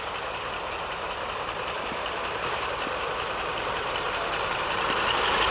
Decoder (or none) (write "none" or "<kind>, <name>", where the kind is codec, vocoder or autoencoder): vocoder, BigVGAN v2